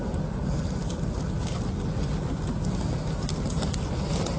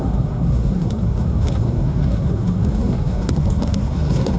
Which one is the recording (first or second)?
first